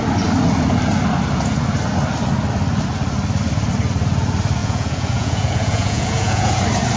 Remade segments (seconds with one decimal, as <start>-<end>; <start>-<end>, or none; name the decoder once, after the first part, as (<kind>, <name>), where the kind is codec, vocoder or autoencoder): 4.6-6.6 (vocoder, Vocos)